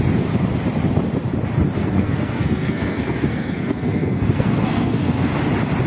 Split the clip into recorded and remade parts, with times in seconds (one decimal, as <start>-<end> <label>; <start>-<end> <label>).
0.0-1.8 recorded; 1.8-5.3 remade; 5.3-5.9 recorded

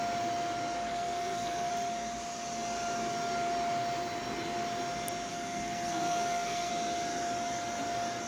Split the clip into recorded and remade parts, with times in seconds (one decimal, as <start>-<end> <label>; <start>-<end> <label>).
0.0-0.9 recorded; 0.9-1.7 remade; 1.7-5.3 recorded; 5.3-6.7 remade; 6.7-8.3 recorded

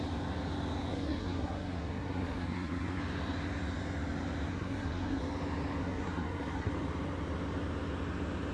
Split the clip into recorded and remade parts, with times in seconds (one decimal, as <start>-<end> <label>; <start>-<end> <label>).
0.0-0.9 recorded; 0.9-3.0 remade; 3.0-4.5 recorded; 4.5-5.2 remade; 5.2-5.8 recorded; 5.8-6.7 remade; 6.7-8.5 recorded

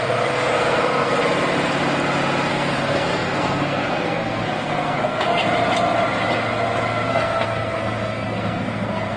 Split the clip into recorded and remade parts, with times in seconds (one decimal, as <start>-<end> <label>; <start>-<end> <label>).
0.0-1.2 remade; 1.2-2.5 recorded; 2.5-5.4 remade; 5.4-7.1 recorded; 7.1-9.2 remade

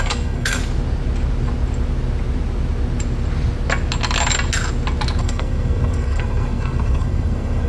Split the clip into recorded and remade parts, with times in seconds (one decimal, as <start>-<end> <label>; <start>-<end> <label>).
0.0-0.6 remade; 0.6-5.2 recorded; 5.2-7.7 remade